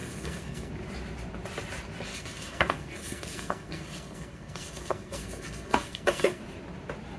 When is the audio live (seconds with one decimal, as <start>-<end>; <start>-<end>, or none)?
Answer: 0.7-2.1; 6.4-7.2